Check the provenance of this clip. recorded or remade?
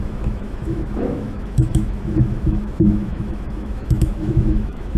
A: remade